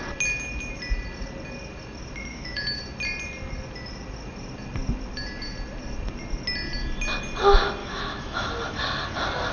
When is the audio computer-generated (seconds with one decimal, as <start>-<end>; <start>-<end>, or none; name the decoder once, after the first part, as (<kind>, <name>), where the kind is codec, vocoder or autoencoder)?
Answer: 2.3-2.8 (autoencoder, DAC-VAE); 7.8-8.5